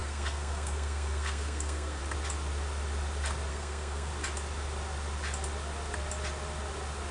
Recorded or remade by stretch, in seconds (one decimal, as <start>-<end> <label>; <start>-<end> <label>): 0.0-2.0 remade; 2.0-3.5 recorded; 3.5-4.1 remade; 4.1-7.1 recorded